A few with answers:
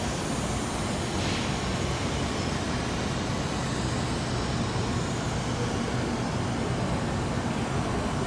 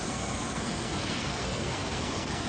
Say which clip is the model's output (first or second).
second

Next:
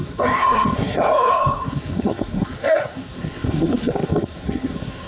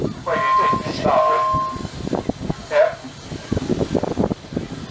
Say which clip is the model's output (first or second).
first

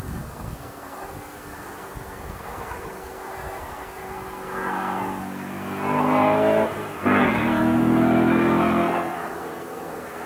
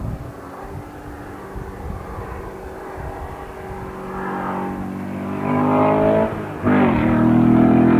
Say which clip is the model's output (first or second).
first